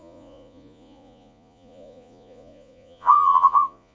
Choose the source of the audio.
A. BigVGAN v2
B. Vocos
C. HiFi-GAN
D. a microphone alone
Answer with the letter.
B